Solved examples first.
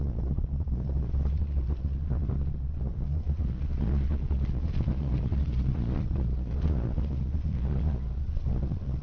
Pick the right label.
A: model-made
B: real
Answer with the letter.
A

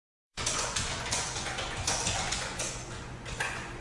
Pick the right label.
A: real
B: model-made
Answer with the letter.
B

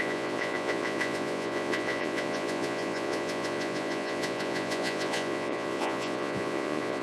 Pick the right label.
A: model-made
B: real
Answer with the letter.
A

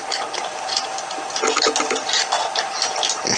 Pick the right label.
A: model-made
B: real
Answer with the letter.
B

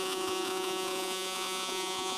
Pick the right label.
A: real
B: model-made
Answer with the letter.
B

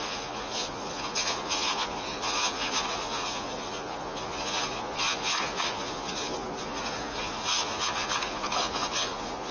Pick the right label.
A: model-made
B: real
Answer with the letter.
A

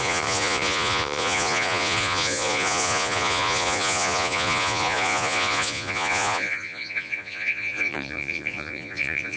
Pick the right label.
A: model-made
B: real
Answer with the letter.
A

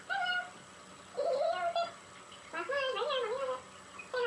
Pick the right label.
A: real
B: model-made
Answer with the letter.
A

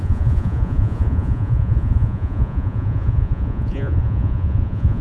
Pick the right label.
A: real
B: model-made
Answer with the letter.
B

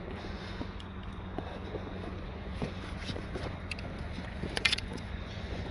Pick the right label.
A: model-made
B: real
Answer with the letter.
A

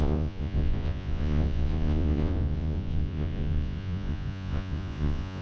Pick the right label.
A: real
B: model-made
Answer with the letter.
B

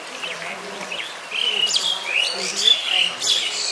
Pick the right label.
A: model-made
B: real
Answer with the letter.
B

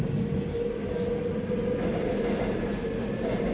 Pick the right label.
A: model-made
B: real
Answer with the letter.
B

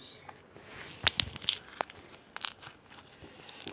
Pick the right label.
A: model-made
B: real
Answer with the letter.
B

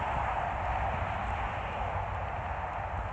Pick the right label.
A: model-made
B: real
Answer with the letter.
B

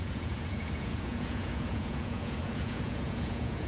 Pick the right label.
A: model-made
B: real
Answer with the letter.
A